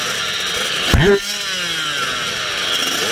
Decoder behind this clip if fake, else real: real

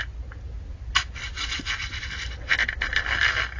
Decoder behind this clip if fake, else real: real